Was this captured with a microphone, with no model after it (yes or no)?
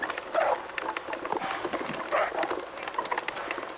yes